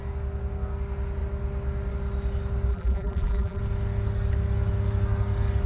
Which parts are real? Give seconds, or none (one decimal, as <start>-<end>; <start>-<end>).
0.0-2.7; 3.6-5.7